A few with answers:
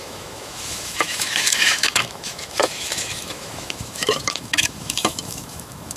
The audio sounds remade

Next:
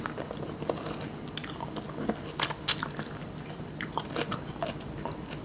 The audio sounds recorded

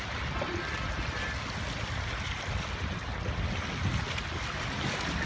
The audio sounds recorded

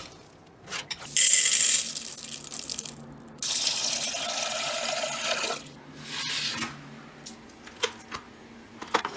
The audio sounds recorded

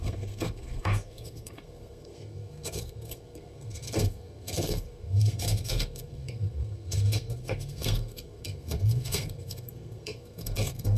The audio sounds remade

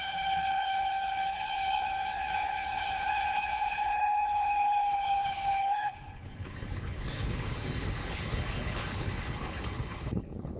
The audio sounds remade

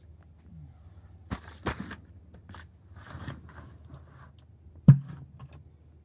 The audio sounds recorded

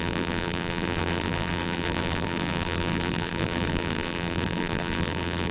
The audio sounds remade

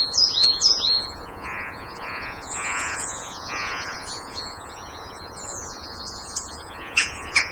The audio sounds remade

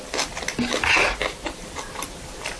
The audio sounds recorded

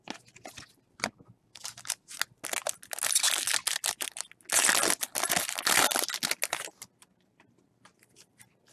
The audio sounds recorded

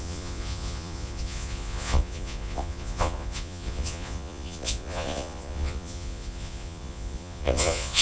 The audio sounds remade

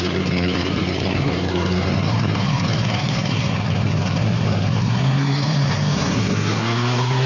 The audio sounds remade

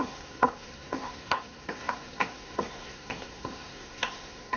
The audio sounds remade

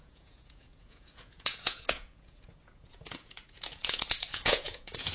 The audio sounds remade